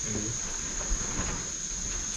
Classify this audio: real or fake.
real